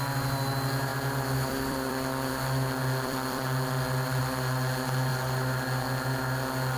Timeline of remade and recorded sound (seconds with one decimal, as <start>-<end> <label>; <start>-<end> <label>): 0.0-0.9 recorded; 0.9-2.3 remade; 2.3-2.8 recorded; 2.8-4.2 remade; 4.2-6.8 recorded